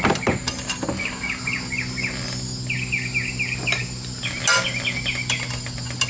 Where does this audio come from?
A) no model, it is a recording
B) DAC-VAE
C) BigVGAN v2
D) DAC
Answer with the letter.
A